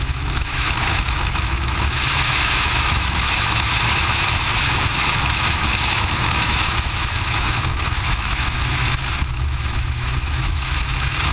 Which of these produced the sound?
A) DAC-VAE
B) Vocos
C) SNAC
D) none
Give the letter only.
A